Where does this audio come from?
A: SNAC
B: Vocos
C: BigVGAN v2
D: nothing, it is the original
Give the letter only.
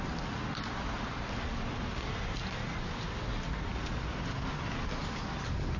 D